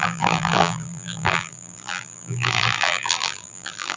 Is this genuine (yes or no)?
no